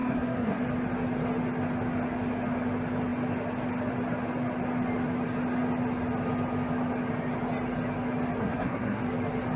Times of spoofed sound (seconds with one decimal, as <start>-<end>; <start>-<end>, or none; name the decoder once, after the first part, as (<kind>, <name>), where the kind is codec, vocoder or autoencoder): 0.0-0.6 (codec, SNAC); 8.4-9.0